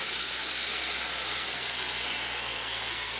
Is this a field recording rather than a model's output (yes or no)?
no